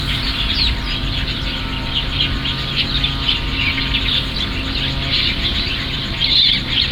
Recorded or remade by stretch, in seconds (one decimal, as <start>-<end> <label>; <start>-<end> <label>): 0.0-1.0 remade; 1.0-5.1 recorded; 5.1-6.9 remade